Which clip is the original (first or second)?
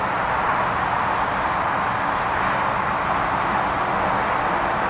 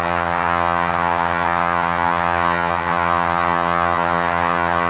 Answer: first